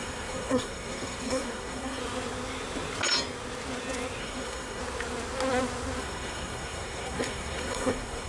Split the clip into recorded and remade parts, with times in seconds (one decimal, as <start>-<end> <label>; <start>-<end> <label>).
0.0-2.0 remade; 2.0-4.2 recorded; 4.2-4.8 remade; 4.8-6.0 recorded; 6.0-8.3 remade

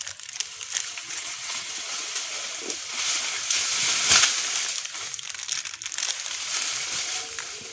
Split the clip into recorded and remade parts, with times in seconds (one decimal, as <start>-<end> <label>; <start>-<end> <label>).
0.0-1.0 recorded; 1.0-2.1 remade; 2.1-7.7 recorded

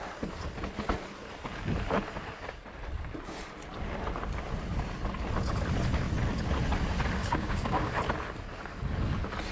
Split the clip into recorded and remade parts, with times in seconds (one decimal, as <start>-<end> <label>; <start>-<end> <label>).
0.0-7.2 recorded; 7.2-7.9 remade; 7.9-9.5 recorded

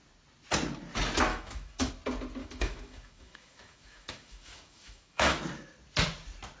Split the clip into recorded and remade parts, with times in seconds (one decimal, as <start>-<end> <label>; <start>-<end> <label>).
0.0-1.3 recorded; 1.3-1.9 remade; 1.9-2.4 recorded; 2.4-5.4 remade; 5.4-6.6 recorded

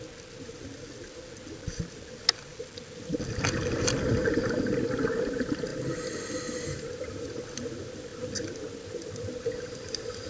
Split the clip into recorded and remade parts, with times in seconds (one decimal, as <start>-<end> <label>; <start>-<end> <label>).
0.0-10.3 recorded

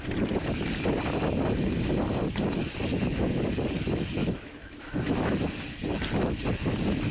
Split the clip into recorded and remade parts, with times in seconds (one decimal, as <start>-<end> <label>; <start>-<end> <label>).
0.0-4.2 recorded; 4.2-5.4 remade; 5.4-7.1 recorded

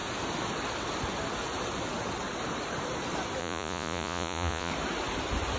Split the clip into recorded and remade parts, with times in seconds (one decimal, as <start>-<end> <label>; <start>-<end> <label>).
0.0-3.4 recorded; 3.4-4.7 remade; 4.7-5.6 recorded